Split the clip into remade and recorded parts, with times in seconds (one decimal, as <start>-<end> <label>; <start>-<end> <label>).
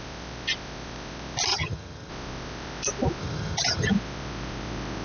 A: 0.0-1.5 recorded; 1.5-2.1 remade; 2.1-3.2 recorded; 3.2-3.9 remade; 3.9-5.0 recorded